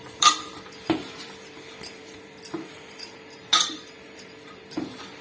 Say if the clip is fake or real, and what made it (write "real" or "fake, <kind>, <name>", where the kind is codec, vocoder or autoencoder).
fake, vocoder, BigVGAN v2